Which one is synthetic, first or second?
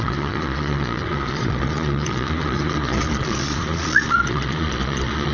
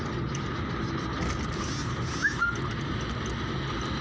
first